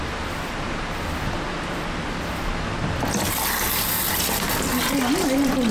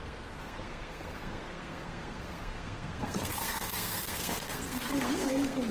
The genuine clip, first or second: first